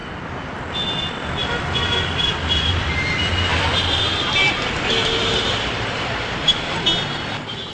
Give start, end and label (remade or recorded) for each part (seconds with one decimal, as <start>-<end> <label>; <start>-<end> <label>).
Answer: 0.0-5.0 recorded; 5.0-6.9 remade; 6.9-7.7 recorded